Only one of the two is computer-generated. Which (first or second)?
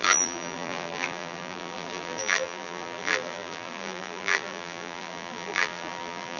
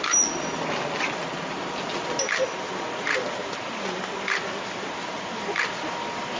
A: first